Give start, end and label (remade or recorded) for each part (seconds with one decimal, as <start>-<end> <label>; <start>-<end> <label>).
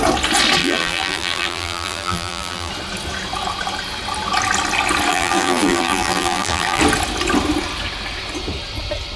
0.0-0.6 recorded; 0.6-2.7 remade; 2.7-5.1 recorded; 5.1-6.8 remade; 6.8-9.2 recorded